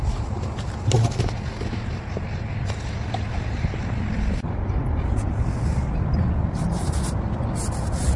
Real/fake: real